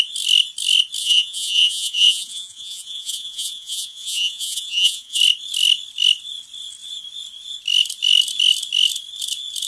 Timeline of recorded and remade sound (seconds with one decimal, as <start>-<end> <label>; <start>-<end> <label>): 0.0-1.0 recorded; 1.0-5.2 remade; 5.2-9.7 recorded